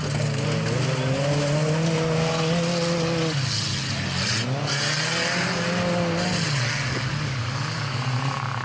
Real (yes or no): yes